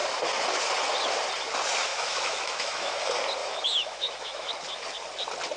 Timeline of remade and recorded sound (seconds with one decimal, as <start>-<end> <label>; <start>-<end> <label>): 0.0-1.9 recorded; 1.9-3.0 remade; 3.0-3.4 recorded; 3.4-4.5 remade; 4.5-5.6 recorded